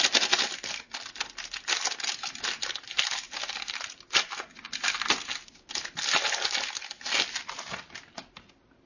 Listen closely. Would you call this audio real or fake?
real